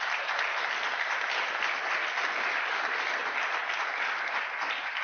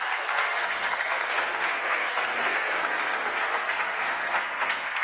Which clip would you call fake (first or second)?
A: second